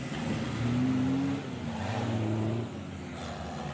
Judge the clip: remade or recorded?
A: recorded